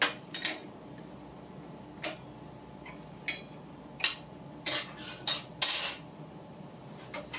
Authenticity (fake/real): real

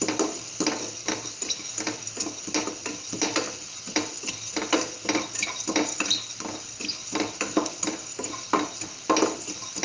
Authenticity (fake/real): real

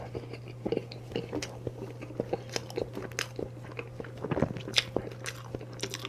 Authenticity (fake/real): real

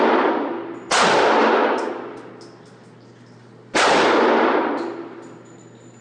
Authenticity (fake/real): real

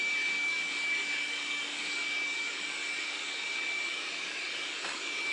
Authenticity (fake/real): fake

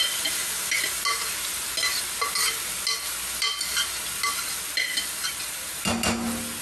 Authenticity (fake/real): real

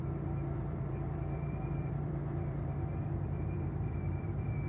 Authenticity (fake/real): fake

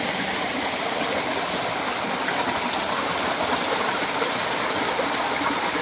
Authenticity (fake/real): real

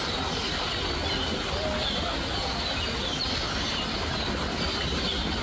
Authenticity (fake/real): real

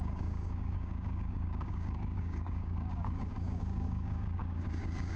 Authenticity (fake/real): fake